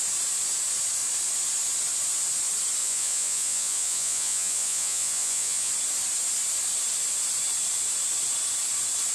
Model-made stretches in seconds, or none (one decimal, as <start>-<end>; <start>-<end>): 2.8-5.7